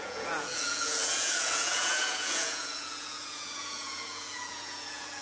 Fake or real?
fake